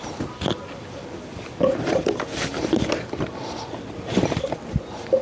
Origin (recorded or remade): remade